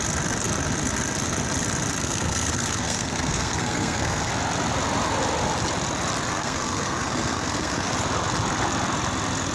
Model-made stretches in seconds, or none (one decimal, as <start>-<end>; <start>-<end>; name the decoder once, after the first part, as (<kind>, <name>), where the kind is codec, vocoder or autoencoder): 2.0-4.3 (codec, SNAC); 6.3-7.9